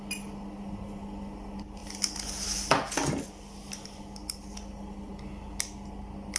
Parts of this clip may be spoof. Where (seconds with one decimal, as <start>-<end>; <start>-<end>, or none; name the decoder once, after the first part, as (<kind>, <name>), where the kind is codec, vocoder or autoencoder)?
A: none